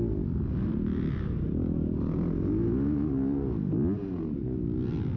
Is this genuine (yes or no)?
yes